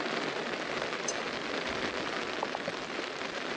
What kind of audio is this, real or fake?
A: fake